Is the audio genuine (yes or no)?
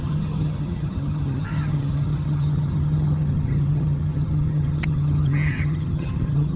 no